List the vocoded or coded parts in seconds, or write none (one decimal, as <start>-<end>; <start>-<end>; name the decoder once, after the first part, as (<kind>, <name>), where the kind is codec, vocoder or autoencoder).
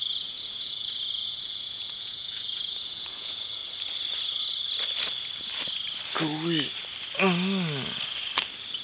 0.0-3.6 (vocoder, Vocos)